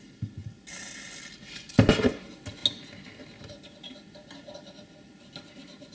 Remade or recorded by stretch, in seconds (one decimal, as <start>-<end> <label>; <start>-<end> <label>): 0.0-5.9 recorded